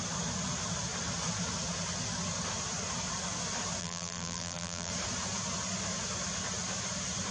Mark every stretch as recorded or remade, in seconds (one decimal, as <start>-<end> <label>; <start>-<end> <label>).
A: 0.0-3.8 recorded; 3.8-4.9 remade; 4.9-7.3 recorded